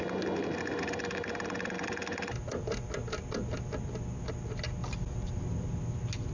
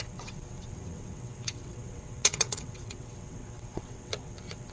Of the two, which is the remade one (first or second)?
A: second